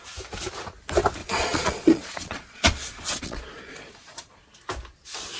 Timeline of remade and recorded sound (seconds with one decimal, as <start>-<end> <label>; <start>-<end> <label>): 0.0-1.2 recorded; 1.2-4.4 remade; 4.4-5.4 recorded